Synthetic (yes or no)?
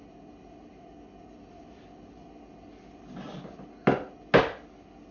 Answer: no